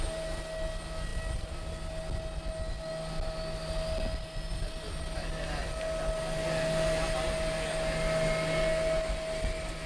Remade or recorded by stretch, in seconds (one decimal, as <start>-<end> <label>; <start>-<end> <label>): 0.0-9.9 recorded